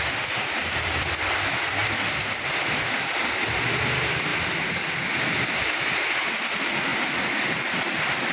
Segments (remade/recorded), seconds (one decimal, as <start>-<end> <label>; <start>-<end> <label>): 0.0-1.8 remade; 1.8-2.3 recorded; 2.3-8.3 remade